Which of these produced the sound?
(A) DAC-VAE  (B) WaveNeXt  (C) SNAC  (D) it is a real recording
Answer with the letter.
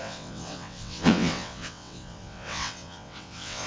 B